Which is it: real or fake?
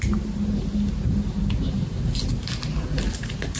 real